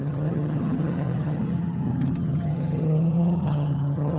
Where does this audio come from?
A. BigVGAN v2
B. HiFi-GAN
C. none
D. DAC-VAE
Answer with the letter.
B